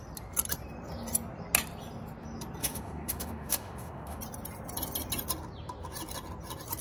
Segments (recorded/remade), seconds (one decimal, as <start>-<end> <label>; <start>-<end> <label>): 0.0-2.6 recorded; 2.6-4.2 remade; 4.2-6.8 recorded